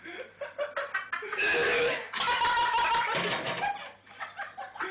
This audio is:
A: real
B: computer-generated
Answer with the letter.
A